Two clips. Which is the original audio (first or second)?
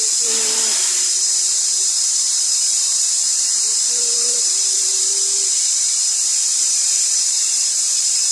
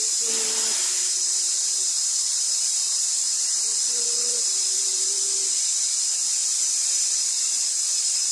second